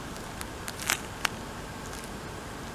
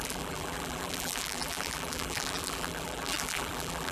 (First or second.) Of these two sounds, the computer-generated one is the second